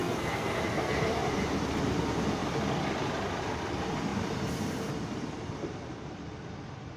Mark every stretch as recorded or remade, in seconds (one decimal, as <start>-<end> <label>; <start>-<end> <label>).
0.0-1.0 remade; 1.0-7.0 recorded